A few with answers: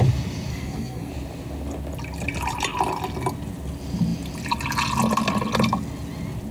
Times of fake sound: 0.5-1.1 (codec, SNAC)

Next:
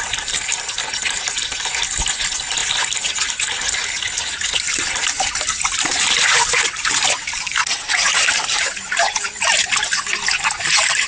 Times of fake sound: none